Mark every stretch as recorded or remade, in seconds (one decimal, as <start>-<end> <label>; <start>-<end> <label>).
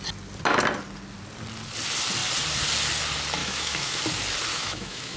0.0-3.4 recorded; 3.4-4.0 remade; 4.0-4.5 recorded; 4.5-5.2 remade